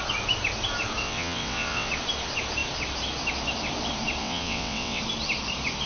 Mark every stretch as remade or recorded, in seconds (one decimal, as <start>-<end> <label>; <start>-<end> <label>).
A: 0.0-1.0 recorded; 1.0-1.9 remade; 1.9-4.2 recorded; 4.2-5.0 remade; 5.0-5.9 recorded